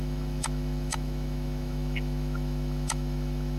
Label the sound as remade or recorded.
remade